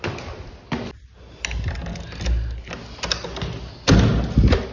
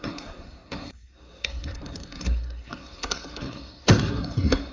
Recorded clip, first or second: first